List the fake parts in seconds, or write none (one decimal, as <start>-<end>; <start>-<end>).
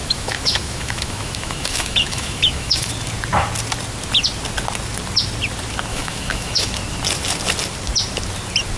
0.0-2.9; 5.9-6.7